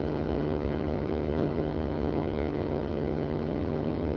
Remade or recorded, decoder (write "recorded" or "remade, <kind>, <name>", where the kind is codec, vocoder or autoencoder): remade, vocoder, HiFi-GAN